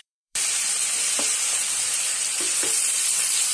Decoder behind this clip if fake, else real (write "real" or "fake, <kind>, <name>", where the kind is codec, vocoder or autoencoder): fake, vocoder, BigVGAN v2